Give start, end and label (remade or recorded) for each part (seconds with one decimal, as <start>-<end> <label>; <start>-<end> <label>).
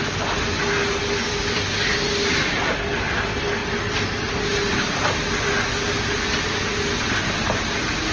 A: 0.0-8.1 recorded